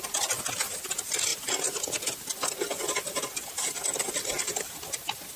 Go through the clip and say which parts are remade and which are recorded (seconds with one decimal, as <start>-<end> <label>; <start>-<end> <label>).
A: 0.0-5.4 recorded